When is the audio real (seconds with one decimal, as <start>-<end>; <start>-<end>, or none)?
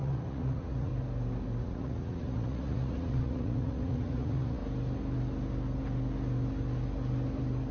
0.9-1.6; 4.6-7.7